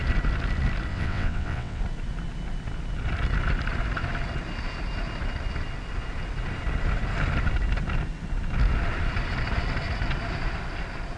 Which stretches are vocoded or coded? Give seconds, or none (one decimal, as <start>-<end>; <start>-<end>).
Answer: 0.9-1.8